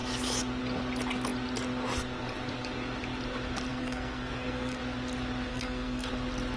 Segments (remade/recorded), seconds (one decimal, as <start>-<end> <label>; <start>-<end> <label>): 0.0-3.7 recorded; 3.7-4.8 remade; 4.8-5.5 recorded; 5.5-6.1 remade; 6.1-6.6 recorded